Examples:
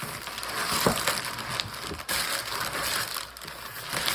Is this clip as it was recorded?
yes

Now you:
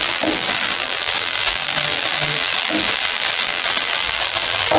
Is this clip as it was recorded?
no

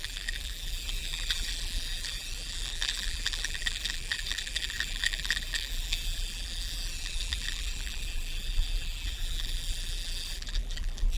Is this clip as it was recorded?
no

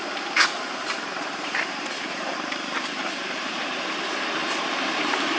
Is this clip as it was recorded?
no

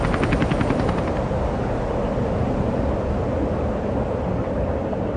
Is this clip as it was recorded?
yes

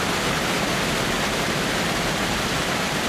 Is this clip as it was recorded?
no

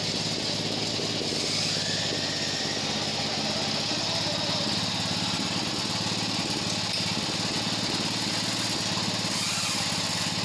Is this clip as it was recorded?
yes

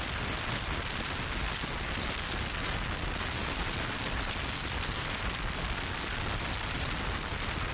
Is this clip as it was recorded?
yes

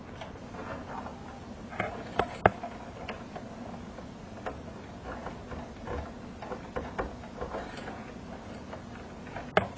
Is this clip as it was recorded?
yes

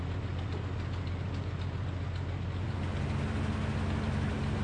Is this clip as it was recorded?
yes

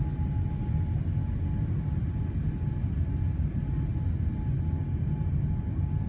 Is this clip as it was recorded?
yes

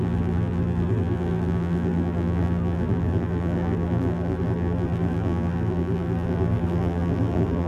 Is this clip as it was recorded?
no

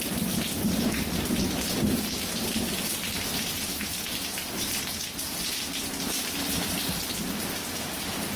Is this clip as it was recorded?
yes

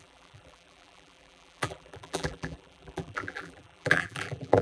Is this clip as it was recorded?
no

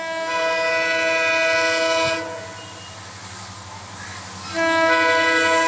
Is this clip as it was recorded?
yes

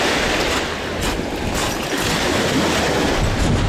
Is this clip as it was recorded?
yes